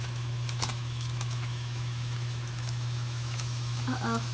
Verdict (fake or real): fake